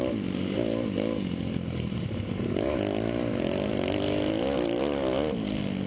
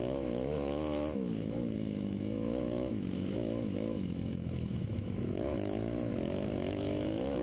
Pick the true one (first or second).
first